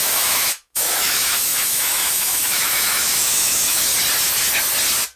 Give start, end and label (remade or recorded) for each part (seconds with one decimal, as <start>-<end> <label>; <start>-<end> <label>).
0.0-3.9 remade; 3.9-5.2 recorded